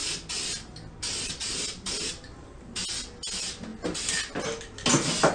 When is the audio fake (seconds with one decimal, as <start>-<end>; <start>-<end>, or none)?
1.4-2.1